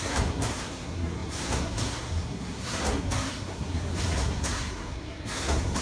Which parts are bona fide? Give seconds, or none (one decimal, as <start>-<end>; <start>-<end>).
none